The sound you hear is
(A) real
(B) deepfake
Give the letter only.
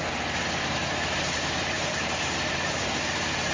B